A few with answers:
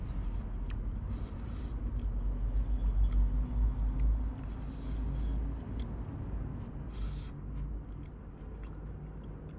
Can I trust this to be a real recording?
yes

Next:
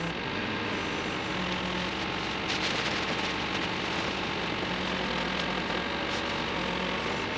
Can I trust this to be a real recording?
yes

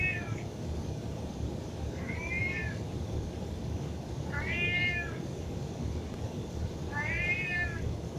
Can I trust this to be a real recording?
no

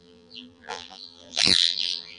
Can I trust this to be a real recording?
no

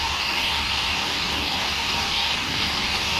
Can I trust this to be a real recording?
no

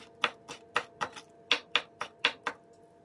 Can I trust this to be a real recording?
yes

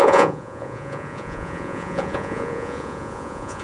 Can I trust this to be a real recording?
no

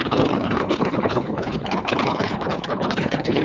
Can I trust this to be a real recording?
no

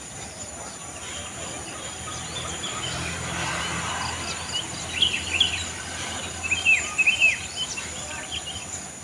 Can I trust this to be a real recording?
yes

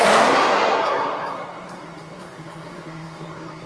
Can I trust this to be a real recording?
no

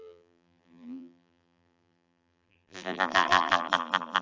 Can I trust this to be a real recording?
no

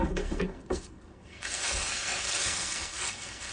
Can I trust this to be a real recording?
no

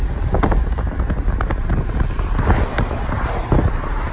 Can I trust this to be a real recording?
yes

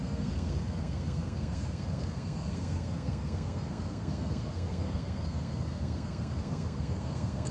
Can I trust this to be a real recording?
no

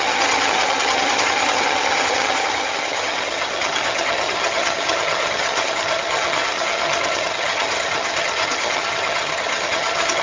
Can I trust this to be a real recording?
no